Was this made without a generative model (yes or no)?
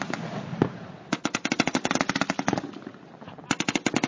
yes